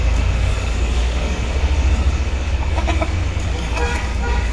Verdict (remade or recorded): remade